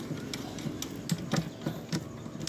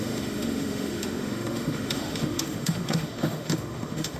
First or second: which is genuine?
first